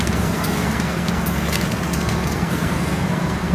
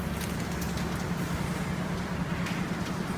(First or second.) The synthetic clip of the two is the first